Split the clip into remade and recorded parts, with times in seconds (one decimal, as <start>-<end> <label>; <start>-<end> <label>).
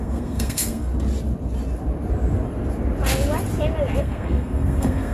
0.0-0.9 remade; 0.9-4.0 recorded; 4.0-5.1 remade